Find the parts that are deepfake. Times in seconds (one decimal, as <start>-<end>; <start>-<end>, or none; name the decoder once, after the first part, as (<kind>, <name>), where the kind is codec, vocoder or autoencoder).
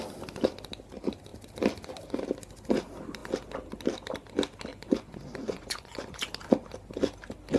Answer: 4.7-6.3 (vocoder, Vocos)